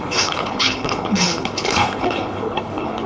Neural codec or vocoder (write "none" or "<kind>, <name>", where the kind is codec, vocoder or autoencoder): codec, HILCodec